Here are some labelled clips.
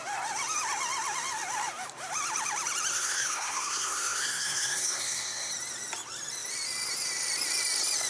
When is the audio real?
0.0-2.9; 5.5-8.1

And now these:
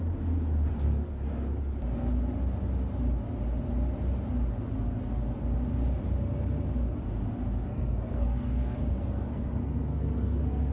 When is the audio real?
0.0-0.7; 1.3-7.7

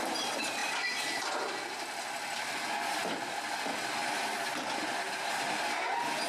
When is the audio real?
0.0-0.6; 1.5-4.0; 5.8-6.3

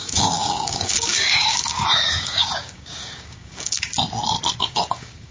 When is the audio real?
3.9-4.6

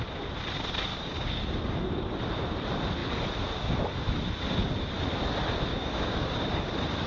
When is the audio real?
0.0-0.9; 2.2-5.7; 6.6-7.1

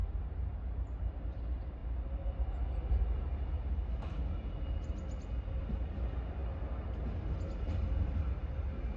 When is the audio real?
1.1-9.0

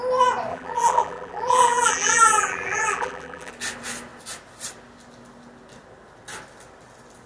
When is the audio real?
0.0-0.5; 3.5-7.3